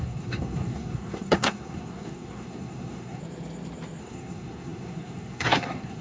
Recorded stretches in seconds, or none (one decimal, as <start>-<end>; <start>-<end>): 3.2-4.0